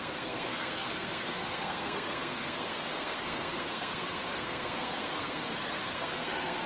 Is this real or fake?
fake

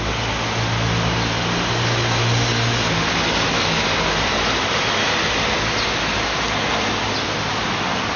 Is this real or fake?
real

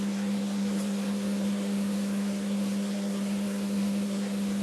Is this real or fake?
fake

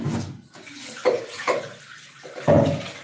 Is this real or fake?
real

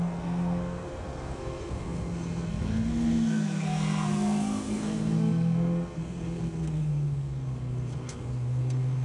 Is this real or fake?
fake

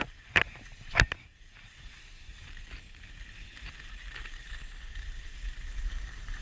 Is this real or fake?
real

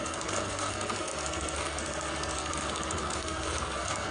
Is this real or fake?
fake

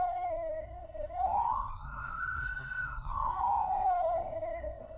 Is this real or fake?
fake